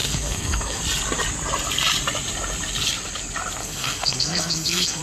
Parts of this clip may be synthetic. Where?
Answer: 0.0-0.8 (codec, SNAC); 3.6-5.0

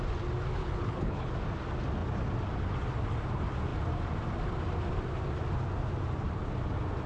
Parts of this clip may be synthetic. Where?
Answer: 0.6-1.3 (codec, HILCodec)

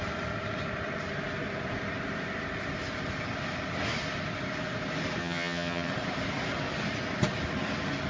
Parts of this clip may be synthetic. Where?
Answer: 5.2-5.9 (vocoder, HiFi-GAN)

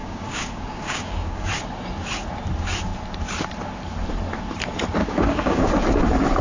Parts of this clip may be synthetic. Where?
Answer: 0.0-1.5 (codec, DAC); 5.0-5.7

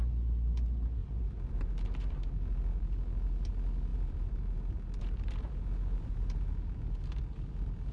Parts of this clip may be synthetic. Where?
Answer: 1.0-2.3 (vocoder, BigVGAN v2); 3.9-6.5